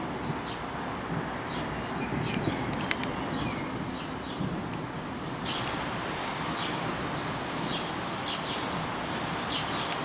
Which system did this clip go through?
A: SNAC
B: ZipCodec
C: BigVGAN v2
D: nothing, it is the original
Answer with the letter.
D